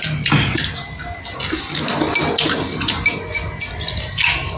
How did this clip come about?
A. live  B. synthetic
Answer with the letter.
A